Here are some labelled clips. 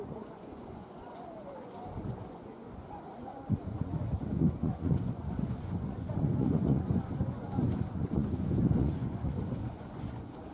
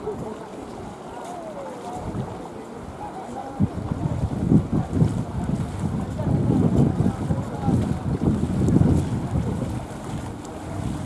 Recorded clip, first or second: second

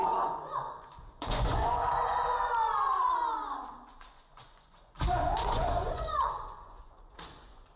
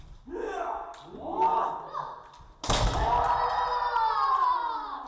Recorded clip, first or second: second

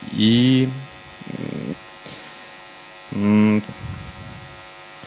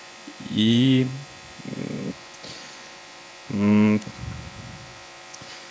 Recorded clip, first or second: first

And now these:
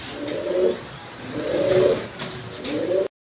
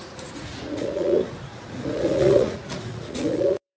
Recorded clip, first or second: first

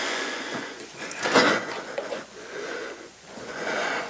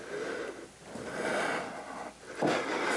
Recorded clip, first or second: second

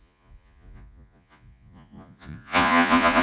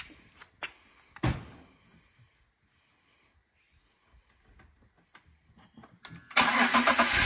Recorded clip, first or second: second